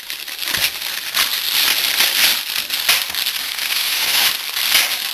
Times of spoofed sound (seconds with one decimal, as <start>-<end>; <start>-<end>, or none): 3.4-4.3